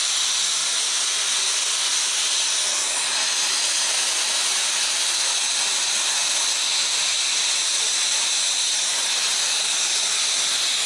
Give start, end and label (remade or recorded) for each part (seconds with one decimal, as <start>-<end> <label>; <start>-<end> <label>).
0.0-10.9 recorded